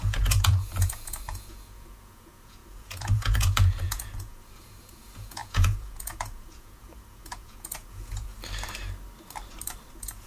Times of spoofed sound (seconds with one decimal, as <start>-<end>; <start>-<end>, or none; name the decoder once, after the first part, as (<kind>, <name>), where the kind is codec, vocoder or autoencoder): 0.0-8.3 (vocoder, Vocos); 9.9-10.3